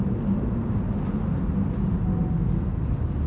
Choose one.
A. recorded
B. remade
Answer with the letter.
A